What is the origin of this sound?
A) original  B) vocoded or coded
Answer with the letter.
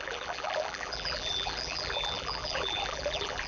B